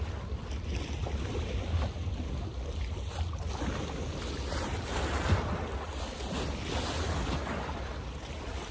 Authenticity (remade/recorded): recorded